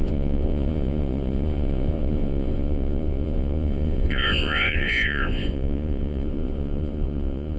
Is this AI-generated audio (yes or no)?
yes